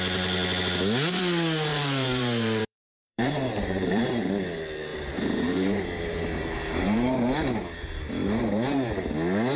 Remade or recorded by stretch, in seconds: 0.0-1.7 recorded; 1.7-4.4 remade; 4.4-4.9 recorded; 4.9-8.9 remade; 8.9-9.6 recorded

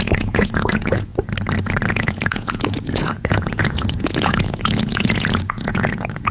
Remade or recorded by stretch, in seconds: 0.0-1.1 remade; 1.1-1.9 recorded; 1.9-6.3 remade

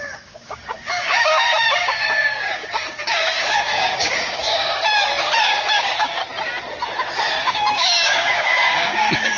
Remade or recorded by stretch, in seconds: 0.0-4.8 remade; 4.8-5.4 recorded; 5.4-6.2 remade; 6.2-7.4 recorded; 7.4-9.4 remade

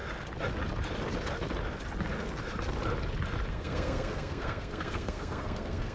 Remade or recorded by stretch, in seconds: 0.0-3.5 recorded; 3.5-5.9 remade

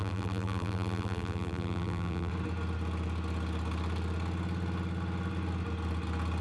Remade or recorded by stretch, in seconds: 0.0-2.3 remade; 2.3-6.4 recorded

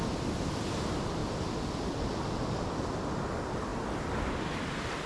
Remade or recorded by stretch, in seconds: 0.0-1.2 recorded; 1.2-2.2 remade; 2.2-5.1 recorded

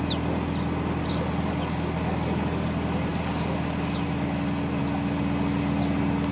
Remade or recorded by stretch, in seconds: 0.0-6.3 recorded

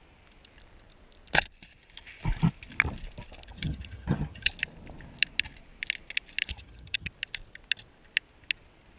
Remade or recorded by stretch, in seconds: 0.0-3.5 recorded; 3.5-4.5 remade; 4.5-6.5 recorded; 6.5-7.1 remade; 7.1-9.0 recorded